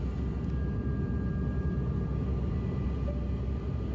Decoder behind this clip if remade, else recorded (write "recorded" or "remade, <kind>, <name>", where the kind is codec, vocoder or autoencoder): recorded